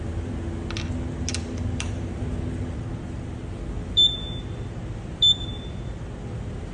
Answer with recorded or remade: recorded